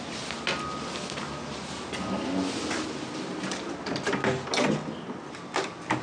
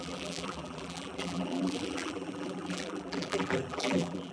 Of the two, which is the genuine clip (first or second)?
first